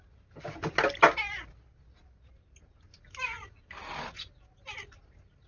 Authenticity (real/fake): real